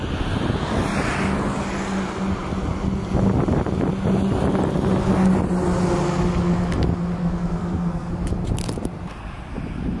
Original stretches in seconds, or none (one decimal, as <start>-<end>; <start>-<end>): 0.0-7.2; 8.1-10.0